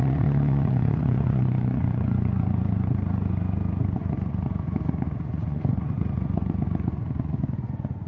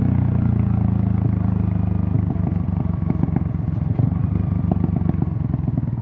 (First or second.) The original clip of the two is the second